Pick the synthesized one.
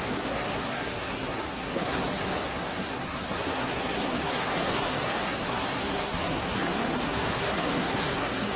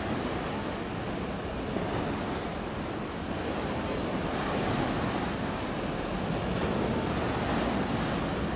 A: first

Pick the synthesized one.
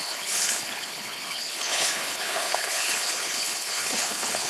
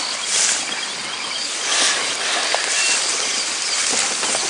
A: first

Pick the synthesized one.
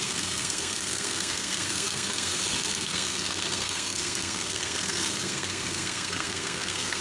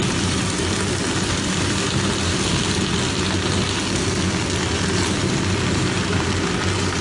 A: first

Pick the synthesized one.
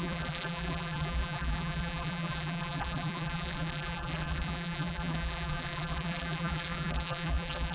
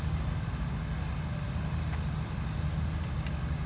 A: first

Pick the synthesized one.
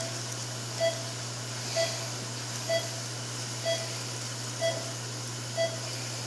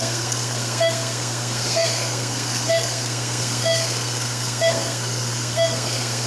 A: second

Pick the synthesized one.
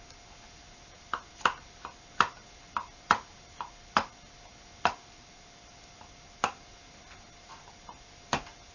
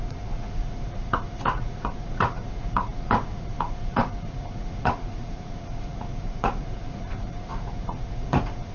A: second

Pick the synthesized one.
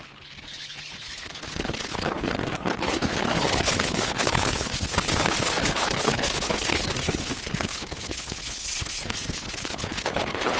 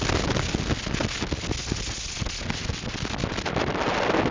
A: first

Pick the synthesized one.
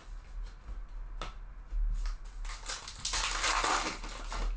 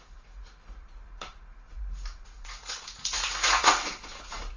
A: second